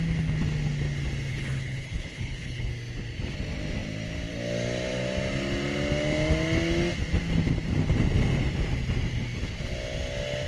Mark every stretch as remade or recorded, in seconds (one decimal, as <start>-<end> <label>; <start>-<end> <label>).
0.0-1.3 recorded; 1.3-2.7 remade; 2.7-10.5 recorded